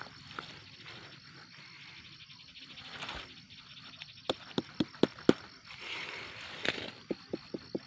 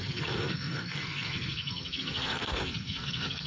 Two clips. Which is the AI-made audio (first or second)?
second